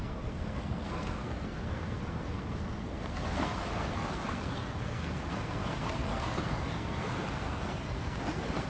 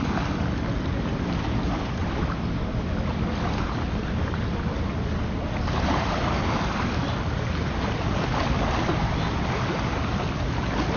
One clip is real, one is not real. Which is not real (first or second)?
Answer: first